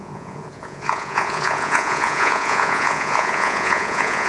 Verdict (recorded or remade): remade